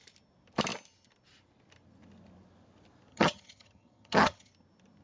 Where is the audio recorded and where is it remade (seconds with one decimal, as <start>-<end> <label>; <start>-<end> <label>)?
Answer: 0.0-3.1 recorded; 3.1-4.5 remade; 4.5-5.0 recorded